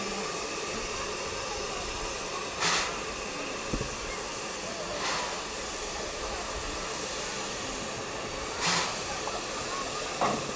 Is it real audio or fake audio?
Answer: real